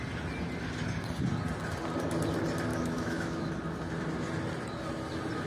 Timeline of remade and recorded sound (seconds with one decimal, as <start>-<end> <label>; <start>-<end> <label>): 0.0-2.7 recorded; 2.7-3.5 remade; 3.5-5.5 recorded

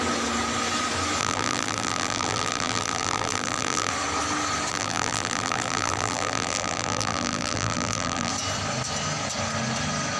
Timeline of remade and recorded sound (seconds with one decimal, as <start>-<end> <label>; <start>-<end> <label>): 0.0-1.2 recorded; 1.2-3.9 remade; 3.9-4.7 recorded; 4.7-8.3 remade; 8.3-10.2 recorded

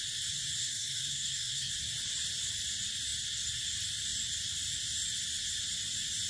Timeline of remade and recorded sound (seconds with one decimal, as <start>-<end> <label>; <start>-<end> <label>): 0.0-0.6 recorded; 0.6-1.7 remade; 1.7-6.3 recorded

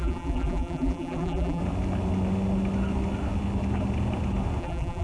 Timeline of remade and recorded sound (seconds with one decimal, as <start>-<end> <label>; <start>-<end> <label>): 0.0-1.6 remade; 1.6-4.6 recorded; 4.6-5.0 remade

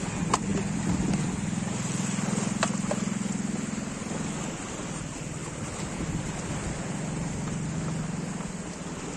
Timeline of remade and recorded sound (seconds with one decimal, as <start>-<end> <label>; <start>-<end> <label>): 0.0-9.2 recorded

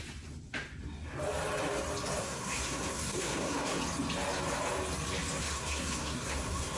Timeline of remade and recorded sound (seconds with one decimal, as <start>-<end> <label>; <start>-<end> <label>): 0.0-2.2 recorded; 2.2-3.8 remade; 3.8-5.4 recorded; 5.4-6.8 remade

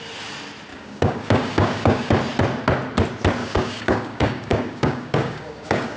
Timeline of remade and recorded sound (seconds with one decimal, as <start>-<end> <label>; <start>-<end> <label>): 0.0-0.7 recorded; 0.7-2.1 remade; 2.1-3.4 recorded; 3.4-6.0 remade